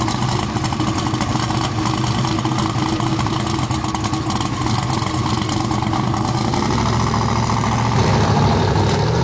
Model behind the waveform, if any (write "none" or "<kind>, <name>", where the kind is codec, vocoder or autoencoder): none